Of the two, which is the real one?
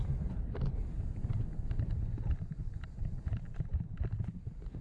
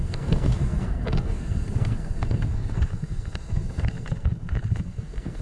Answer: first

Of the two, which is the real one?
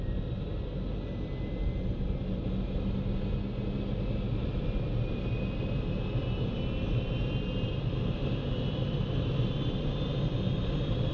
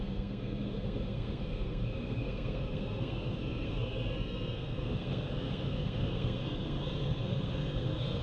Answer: first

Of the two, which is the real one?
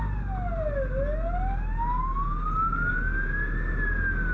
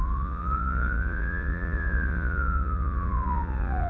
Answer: first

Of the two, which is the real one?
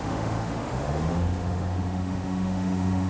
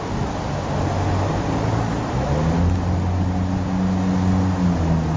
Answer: second